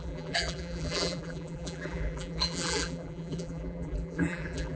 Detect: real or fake fake